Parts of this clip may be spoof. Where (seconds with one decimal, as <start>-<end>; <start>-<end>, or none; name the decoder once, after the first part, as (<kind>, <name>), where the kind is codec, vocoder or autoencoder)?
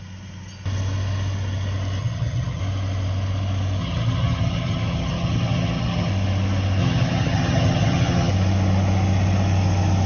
2.0-2.6 (vocoder, HiFi-GAN); 3.8-6.1; 6.8-8.3